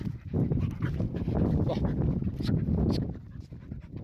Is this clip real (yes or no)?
yes